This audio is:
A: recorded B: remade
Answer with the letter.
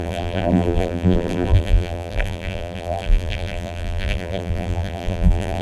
B